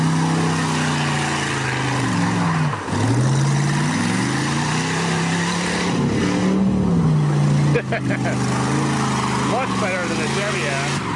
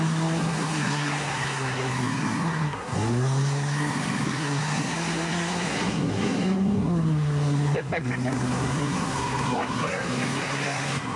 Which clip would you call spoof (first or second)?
second